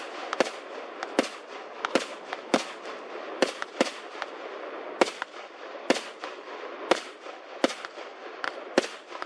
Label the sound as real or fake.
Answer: real